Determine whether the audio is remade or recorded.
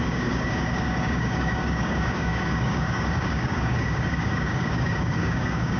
remade